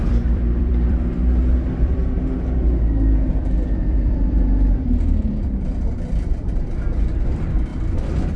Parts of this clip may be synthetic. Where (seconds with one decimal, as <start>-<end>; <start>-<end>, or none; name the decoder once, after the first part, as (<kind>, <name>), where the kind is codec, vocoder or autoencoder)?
0.0-2.0 (vocoder, BigVGAN v2); 3.3-8.4